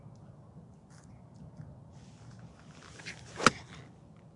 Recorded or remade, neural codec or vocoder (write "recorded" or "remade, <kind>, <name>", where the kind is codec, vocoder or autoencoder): recorded